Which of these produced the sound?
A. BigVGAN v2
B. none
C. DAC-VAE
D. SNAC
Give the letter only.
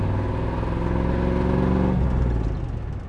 B